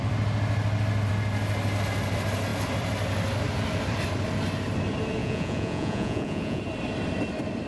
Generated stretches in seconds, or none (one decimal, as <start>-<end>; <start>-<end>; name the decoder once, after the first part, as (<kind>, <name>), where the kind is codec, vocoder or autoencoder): 5.2-6.6 (vocoder, Vocos)